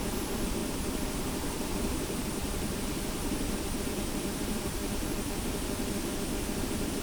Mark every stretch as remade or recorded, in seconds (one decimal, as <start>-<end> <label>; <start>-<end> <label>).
0.0-4.8 remade; 4.8-6.6 recorded; 6.6-7.0 remade